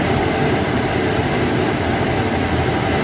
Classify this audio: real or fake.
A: real